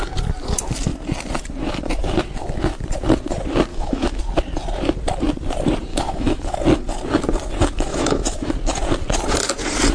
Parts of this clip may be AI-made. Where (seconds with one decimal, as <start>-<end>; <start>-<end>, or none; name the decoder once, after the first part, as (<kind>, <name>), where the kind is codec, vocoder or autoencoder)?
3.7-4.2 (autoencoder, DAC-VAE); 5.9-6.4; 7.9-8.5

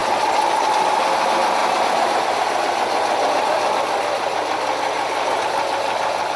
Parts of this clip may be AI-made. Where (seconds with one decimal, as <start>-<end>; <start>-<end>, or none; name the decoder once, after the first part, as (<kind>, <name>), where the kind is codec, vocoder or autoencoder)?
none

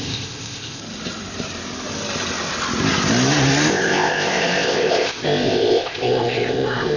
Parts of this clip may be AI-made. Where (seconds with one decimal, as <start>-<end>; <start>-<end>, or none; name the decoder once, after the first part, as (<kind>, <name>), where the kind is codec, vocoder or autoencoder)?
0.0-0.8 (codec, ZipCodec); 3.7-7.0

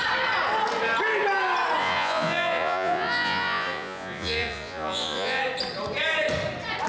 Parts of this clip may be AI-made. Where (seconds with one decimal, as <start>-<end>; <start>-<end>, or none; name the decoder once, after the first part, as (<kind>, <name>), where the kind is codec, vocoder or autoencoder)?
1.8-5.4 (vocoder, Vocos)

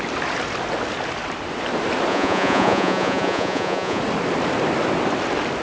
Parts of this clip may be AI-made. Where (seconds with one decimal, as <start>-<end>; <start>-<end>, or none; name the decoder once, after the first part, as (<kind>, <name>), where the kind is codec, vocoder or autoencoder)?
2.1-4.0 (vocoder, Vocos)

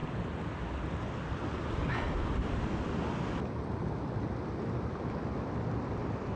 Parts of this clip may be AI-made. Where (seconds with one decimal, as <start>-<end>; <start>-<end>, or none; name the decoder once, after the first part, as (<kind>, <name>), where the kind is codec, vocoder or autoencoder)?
none

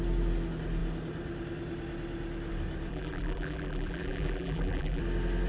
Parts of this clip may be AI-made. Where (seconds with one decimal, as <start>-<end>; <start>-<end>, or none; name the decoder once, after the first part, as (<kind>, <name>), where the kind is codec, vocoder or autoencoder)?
2.9-5.0 (vocoder, BigVGAN v2)

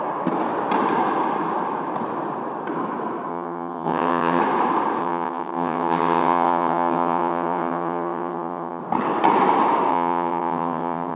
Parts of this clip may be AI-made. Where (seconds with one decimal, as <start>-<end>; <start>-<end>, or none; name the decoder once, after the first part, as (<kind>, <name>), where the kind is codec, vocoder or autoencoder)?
3.3-4.4 (vocoder, HiFi-GAN); 5.0-8.8; 9.9-11.2